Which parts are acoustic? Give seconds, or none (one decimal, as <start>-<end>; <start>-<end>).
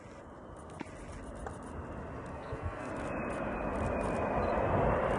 0.0-2.3; 2.9-5.2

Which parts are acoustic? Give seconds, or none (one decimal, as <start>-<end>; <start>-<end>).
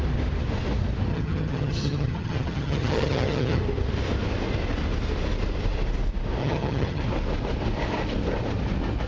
0.0-1.1; 3.6-6.4; 7.0-9.1